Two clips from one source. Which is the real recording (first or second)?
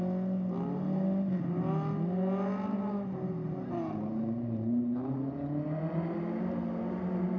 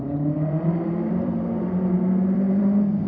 first